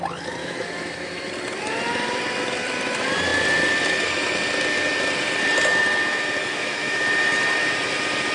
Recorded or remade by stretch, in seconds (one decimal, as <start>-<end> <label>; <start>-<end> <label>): 0.0-0.4 recorded; 0.4-1.3 remade; 1.3-6.4 recorded; 6.4-7.0 remade; 7.0-8.3 recorded